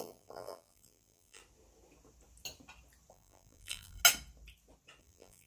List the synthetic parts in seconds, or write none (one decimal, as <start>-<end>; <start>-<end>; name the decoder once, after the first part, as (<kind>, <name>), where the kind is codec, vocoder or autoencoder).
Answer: 0.0-1.4 (vocoder, BigVGAN v2); 3.1-4.0; 5.0-5.5